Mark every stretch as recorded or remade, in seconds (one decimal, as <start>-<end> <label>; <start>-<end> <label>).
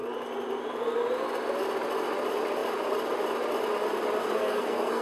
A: 0.0-4.2 recorded; 4.2-5.0 remade